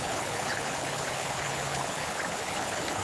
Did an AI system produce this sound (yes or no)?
yes